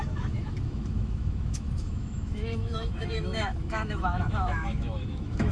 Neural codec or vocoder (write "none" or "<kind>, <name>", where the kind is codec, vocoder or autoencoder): autoencoder, DAC-VAE